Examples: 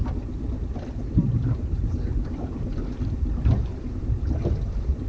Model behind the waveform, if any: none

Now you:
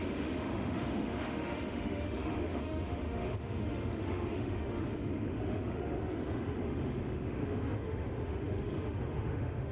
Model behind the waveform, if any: autoencoder, DAC-VAE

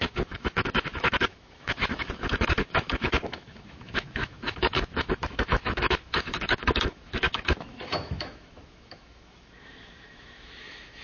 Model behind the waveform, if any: autoencoder, DAC-VAE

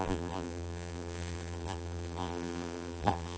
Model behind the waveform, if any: vocoder, BigVGAN v2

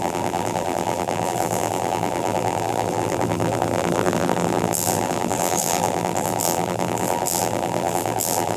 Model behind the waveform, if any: vocoder, BigVGAN v2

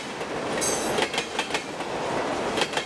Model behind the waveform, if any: none